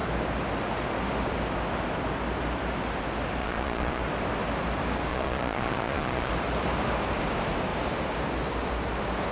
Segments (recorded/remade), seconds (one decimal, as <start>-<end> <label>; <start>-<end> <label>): 0.0-3.4 recorded; 3.4-4.0 remade; 4.0-5.1 recorded; 5.1-6.3 remade; 6.3-9.3 recorded